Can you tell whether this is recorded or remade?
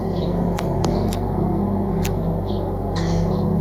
remade